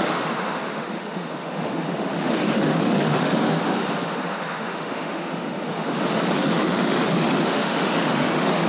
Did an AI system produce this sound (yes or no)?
yes